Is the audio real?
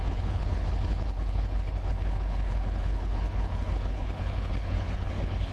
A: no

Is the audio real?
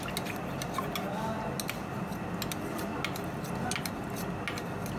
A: yes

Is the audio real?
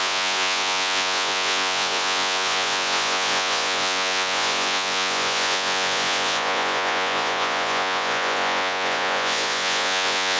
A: no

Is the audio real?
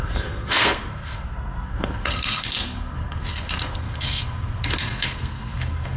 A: no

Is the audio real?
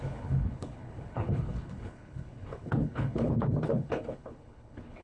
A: no